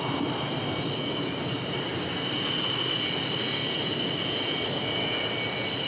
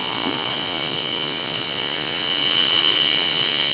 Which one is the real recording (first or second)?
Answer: first